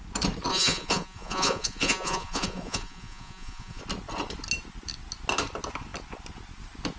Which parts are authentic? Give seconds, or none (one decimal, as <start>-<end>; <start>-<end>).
0.0-0.5; 3.8-7.0

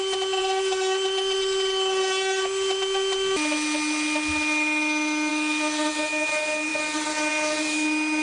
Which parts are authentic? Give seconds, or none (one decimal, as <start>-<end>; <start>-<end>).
0.0-8.2

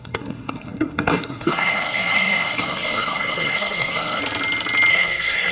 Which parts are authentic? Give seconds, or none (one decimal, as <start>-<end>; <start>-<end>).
4.2-4.9

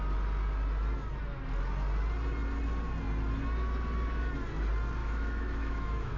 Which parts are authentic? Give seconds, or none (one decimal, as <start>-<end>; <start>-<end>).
0.0-5.0

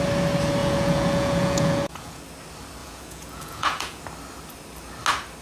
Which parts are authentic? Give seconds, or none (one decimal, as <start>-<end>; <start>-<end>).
0.0-0.6; 2.2-2.8; 4.0-5.4